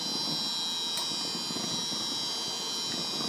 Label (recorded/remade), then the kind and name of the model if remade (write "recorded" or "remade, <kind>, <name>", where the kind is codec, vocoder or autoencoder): recorded